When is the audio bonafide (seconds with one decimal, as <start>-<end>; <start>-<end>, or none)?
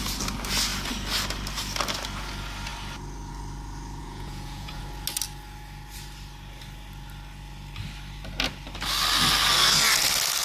0.0-4.0; 4.8-10.4